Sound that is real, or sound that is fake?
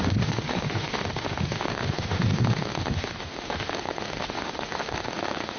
fake